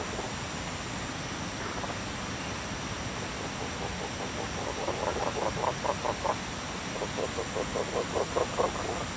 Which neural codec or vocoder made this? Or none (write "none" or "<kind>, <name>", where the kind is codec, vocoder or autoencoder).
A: none